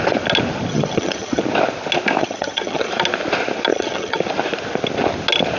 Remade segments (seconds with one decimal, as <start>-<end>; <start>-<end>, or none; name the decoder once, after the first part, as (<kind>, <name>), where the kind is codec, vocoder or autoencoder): 0.7-1.4 (vocoder, HiFi-GAN); 2.2-2.9; 3.7-4.2